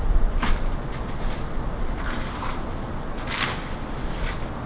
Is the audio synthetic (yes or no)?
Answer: no